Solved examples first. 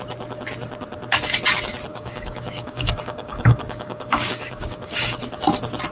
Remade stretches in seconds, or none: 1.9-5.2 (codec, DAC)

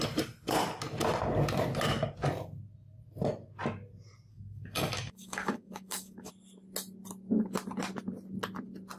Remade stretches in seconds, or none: 4.3-6.3 (codec, DAC)